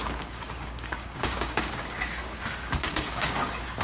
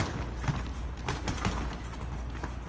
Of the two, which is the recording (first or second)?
second